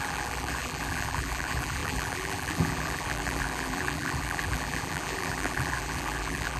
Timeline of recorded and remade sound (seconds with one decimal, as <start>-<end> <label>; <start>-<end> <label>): 0.0-6.6 remade